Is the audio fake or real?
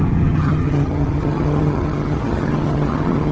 fake